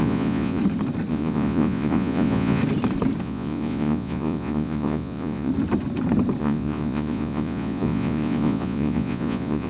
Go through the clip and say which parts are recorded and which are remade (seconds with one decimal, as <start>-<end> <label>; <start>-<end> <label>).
0.0-0.6 remade; 0.6-1.1 recorded; 1.1-2.6 remade; 2.6-3.2 recorded; 3.2-5.5 remade; 5.5-6.4 recorded; 6.4-9.7 remade

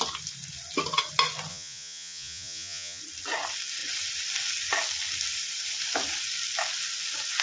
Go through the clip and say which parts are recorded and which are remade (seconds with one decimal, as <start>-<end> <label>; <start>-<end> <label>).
0.0-1.5 recorded; 1.5-3.0 remade; 3.0-7.4 recorded